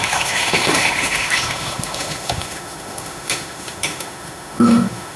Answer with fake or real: fake